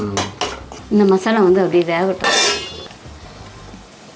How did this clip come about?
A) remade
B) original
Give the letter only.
B